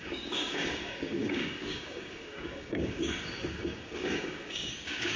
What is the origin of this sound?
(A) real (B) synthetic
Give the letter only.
B